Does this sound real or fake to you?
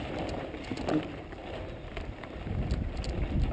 real